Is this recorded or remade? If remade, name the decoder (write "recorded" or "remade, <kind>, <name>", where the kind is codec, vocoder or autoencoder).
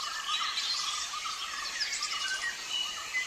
recorded